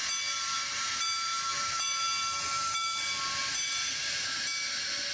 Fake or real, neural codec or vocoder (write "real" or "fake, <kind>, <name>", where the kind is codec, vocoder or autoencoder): real